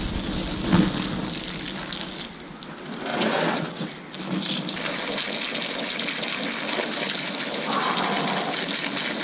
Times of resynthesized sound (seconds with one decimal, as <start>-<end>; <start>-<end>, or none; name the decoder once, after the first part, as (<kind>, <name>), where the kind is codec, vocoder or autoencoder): 3.1-3.9 (vocoder, WaveNeXt)